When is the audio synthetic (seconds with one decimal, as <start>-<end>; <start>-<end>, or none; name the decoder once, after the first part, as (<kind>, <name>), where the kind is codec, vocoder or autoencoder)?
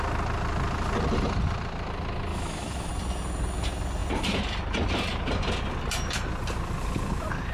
2.3-2.9 (autoencoder, DAC-VAE)